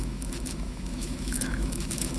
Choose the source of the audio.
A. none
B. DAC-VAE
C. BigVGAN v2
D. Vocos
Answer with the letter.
B